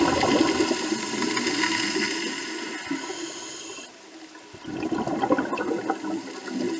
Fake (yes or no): no